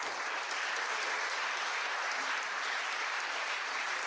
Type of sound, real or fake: fake